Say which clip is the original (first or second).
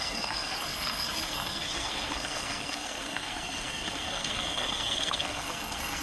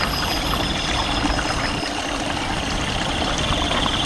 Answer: second